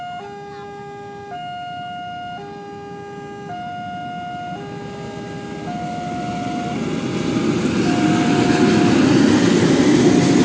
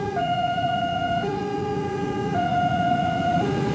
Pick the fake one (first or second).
second